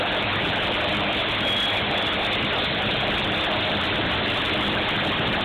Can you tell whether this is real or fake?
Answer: real